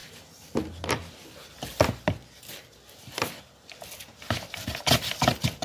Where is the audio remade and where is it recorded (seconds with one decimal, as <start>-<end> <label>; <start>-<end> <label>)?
0.0-5.6 recorded